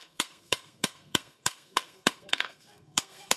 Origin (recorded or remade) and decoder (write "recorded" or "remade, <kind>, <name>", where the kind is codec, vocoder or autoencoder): remade, codec, SNAC